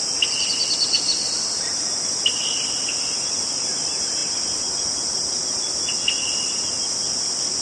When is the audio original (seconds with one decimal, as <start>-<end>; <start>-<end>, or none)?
0.0-7.6